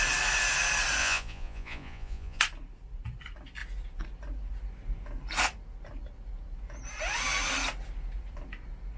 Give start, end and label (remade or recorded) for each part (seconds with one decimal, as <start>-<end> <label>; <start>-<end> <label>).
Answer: 0.0-1.0 recorded; 1.0-2.4 remade; 2.4-9.0 recorded